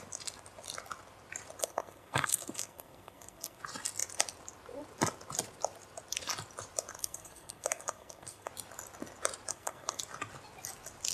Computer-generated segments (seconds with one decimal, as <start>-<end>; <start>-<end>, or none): 1.6-3.6; 7.0-8.5; 9.5-10.0